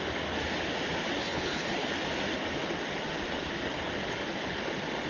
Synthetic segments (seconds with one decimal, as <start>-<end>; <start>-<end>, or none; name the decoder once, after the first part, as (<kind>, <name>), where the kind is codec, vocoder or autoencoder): 1.2-1.9 (codec, HILCodec)